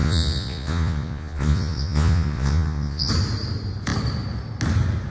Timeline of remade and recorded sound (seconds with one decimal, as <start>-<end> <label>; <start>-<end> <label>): 0.0-3.1 remade; 3.1-5.1 recorded